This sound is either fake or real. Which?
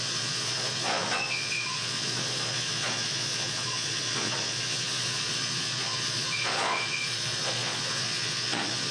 fake